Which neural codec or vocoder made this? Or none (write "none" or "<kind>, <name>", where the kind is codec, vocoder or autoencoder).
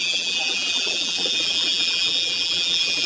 vocoder, BigVGAN v2